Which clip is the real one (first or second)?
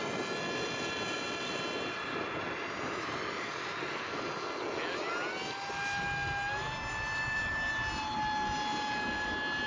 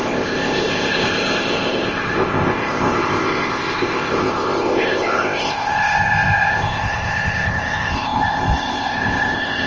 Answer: first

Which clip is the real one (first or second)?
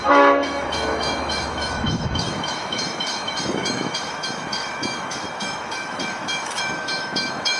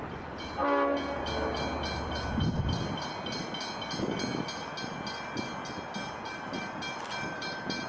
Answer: second